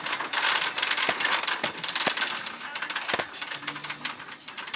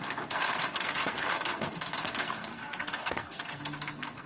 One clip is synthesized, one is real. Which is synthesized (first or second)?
second